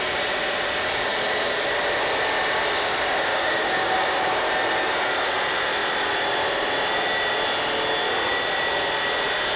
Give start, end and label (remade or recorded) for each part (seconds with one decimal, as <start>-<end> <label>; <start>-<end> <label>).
0.0-3.3 recorded; 3.3-4.5 remade; 4.5-9.6 recorded